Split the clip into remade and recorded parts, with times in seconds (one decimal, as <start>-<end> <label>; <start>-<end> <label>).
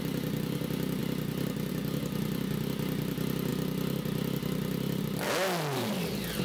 0.0-6.4 recorded